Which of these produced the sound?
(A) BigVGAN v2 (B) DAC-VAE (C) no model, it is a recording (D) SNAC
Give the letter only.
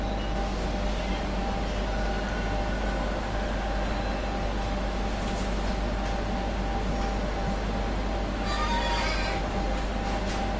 C